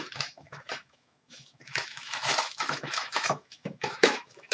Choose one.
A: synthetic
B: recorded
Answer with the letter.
A